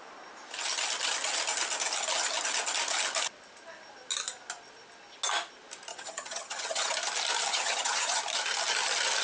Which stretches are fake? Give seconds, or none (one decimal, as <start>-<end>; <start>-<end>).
5.9-6.9; 7.5-8.2